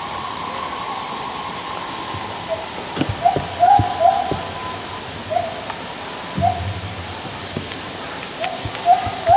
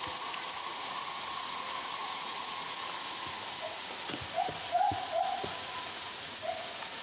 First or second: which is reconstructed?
second